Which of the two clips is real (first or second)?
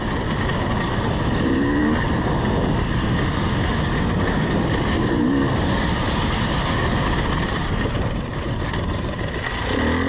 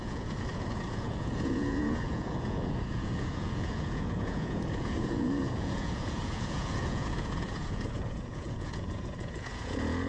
first